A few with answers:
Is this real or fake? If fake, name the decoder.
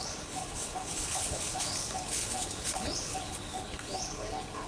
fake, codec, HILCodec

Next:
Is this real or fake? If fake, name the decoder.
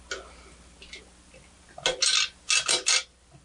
real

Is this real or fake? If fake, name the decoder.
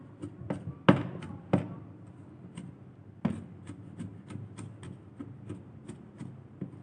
real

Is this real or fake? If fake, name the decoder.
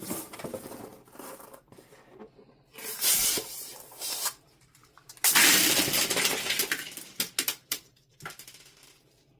fake, vocoder, BigVGAN v2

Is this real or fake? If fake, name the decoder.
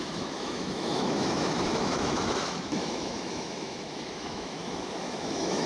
fake, autoencoder, DAC-VAE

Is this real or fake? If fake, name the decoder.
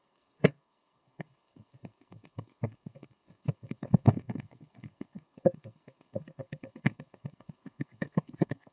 fake, codec, SNAC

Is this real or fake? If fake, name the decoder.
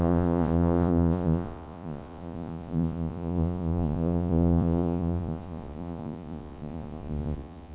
fake, vocoder, Vocos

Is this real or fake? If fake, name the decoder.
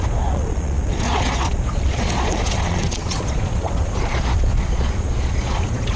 fake, vocoder, Vocos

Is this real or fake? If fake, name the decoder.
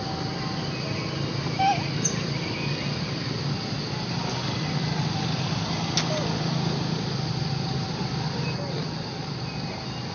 real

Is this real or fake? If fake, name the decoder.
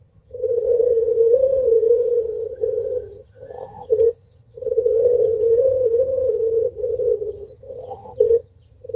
fake, vocoder, HiFi-GAN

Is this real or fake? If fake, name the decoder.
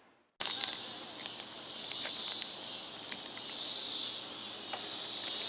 real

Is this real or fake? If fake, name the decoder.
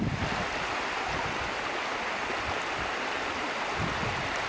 real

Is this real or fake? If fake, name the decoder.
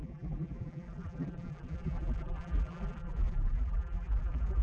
fake, vocoder, BigVGAN v2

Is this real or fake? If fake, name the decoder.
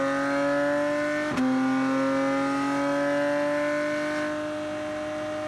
real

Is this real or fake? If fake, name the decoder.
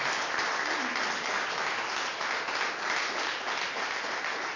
real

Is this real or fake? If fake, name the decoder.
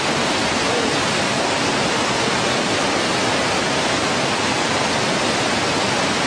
real